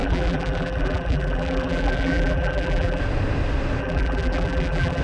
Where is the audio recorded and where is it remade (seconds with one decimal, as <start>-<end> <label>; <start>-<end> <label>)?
0.0-3.0 remade; 3.0-3.8 recorded; 3.8-5.0 remade